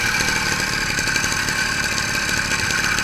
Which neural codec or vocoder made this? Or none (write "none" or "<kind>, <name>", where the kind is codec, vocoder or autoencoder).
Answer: none